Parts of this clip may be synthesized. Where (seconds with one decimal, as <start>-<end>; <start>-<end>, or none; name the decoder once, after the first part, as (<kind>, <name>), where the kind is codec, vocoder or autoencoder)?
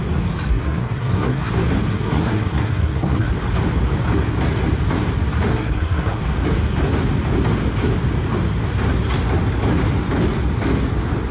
0.5-1.5 (codec, SNAC); 1.9-3.3; 5.5-6.2